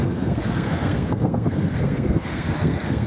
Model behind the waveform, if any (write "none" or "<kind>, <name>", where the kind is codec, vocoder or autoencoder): codec, SNAC